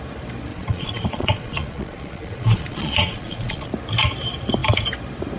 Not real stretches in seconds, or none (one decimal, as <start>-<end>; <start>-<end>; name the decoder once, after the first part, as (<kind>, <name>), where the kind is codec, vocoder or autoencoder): 0.5-3.7 (vocoder, Vocos)